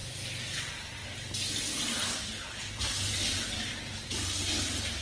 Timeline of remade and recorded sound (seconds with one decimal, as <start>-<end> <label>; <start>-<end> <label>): 0.0-0.6 recorded; 0.6-1.0 remade; 1.0-2.2 recorded; 2.2-5.0 remade

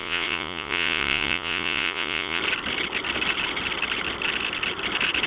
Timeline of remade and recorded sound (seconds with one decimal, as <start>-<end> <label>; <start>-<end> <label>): 0.0-2.4 remade; 2.4-5.3 recorded

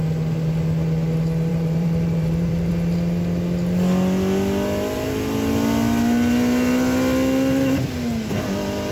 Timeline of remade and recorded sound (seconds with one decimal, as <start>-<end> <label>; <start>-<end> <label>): 0.0-1.5 recorded; 1.5-2.7 remade; 2.7-8.9 recorded

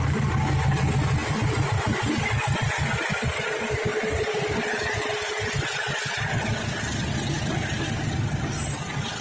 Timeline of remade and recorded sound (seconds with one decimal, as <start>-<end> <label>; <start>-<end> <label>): 0.0-3.9 recorded; 3.9-4.5 remade; 4.5-9.2 recorded

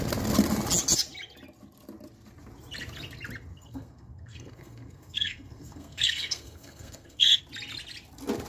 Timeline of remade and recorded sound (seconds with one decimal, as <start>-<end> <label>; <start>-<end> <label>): 0.0-3.5 recorded; 3.5-7.4 remade; 7.4-8.5 recorded

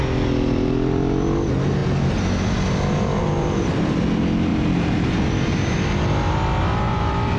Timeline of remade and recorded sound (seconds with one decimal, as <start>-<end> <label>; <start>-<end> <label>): 0.0-3.2 recorded; 3.2-4.0 remade; 4.0-7.4 recorded

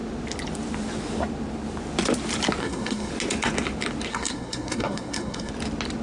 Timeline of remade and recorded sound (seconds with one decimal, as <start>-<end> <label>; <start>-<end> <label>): 0.0-2.6 recorded; 2.6-3.1 remade; 3.1-4.1 recorded; 4.1-5.5 remade; 5.5-6.0 recorded